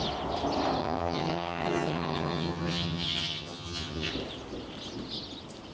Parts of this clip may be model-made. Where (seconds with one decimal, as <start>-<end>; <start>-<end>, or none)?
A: 0.8-4.1